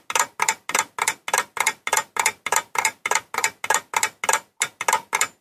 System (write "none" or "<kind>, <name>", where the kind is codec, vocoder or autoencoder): none